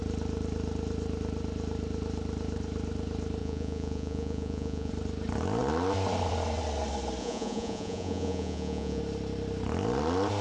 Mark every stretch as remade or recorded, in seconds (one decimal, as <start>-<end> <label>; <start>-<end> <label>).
0.0-3.4 recorded; 3.4-4.9 remade; 4.9-7.2 recorded; 7.2-9.0 remade; 9.0-10.4 recorded